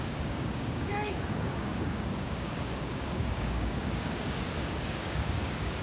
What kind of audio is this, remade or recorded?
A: remade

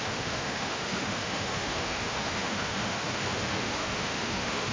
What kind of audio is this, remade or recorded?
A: remade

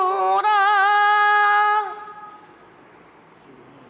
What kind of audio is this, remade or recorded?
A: recorded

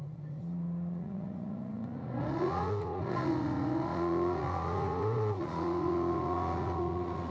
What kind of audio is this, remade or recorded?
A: remade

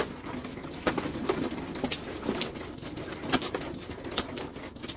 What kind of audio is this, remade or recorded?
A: recorded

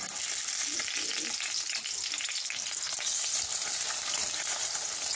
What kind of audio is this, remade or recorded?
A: recorded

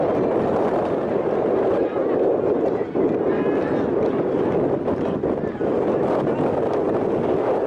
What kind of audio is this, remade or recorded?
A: recorded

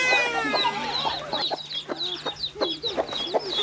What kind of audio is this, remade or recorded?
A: recorded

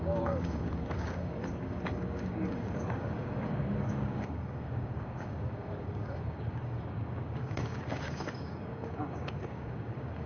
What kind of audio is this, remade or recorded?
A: remade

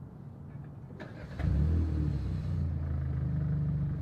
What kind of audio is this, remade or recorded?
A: recorded